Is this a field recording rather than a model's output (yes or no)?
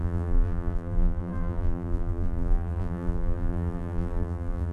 no